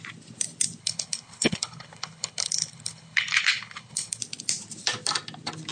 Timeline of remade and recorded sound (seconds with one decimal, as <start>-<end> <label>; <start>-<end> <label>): 0.0-0.8 recorded; 0.8-4.2 remade; 4.2-5.7 recorded